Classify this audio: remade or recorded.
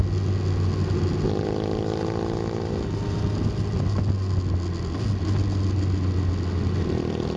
recorded